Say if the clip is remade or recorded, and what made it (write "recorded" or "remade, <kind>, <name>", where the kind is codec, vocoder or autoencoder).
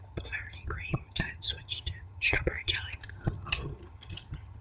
remade, vocoder, HiFi-GAN